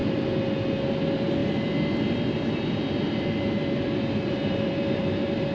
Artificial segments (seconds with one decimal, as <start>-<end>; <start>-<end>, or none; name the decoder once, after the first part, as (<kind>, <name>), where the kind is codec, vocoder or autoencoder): 0.9-5.5 (vocoder, BigVGAN v2)